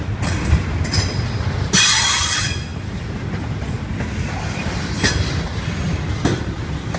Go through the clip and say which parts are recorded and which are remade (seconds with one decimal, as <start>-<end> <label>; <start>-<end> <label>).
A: 0.0-7.0 recorded